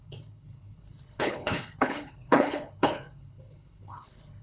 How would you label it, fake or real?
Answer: fake